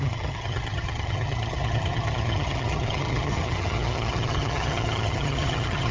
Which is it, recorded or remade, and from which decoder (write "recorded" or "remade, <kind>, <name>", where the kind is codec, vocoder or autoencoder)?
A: remade, vocoder, HiFi-GAN